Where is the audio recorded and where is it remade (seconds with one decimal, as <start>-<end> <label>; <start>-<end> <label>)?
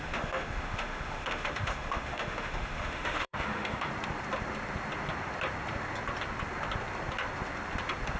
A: 0.0-3.9 remade; 3.9-8.2 recorded